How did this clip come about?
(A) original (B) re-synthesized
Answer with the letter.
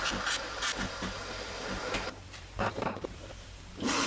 B